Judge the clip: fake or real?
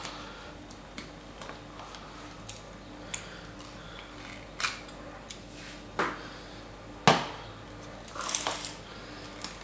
real